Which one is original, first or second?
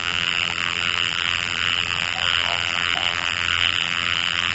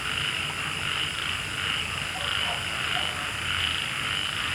second